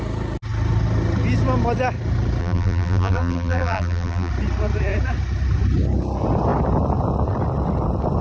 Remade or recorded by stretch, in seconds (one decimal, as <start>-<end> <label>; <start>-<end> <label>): 0.0-2.4 recorded; 2.4-4.3 remade; 4.3-8.2 recorded